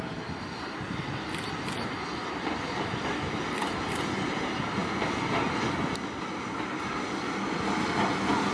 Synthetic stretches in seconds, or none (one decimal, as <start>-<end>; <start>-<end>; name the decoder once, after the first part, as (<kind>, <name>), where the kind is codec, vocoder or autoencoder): none